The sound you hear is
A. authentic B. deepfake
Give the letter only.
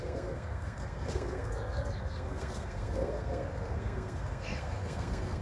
B